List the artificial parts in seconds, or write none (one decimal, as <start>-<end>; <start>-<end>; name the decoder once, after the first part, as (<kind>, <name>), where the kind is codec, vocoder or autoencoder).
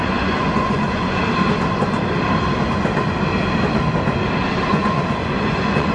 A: 0.0-1.2 (vocoder, Vocos); 4.7-5.9